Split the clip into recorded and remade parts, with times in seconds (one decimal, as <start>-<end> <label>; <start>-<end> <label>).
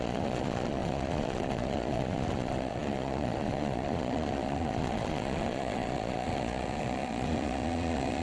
0.0-8.2 remade